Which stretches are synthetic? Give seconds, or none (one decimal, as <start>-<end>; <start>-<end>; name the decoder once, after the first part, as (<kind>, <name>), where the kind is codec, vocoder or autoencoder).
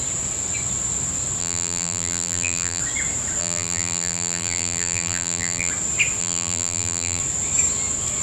1.4-2.8 (vocoder, BigVGAN v2); 3.4-5.7; 6.2-7.2